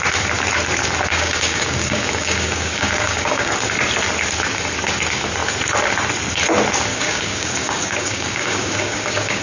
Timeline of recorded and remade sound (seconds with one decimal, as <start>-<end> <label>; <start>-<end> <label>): 0.0-1.1 recorded; 1.1-3.5 remade; 3.5-6.9 recorded; 6.9-9.4 remade